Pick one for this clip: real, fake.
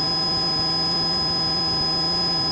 real